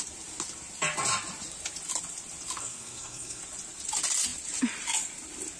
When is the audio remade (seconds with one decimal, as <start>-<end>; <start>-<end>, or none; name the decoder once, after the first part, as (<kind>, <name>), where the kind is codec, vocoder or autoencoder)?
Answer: 2.6-3.4 (codec, SNAC)